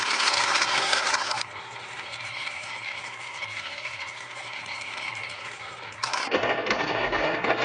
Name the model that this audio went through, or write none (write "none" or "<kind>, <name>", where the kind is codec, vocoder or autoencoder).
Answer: codec, SNAC